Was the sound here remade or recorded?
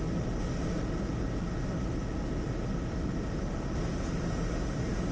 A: recorded